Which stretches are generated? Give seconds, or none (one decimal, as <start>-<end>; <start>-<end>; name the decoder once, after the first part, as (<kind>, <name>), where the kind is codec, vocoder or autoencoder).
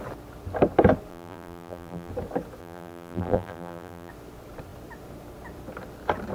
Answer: 1.1-2.1 (vocoder, BigVGAN v2); 2.6-4.1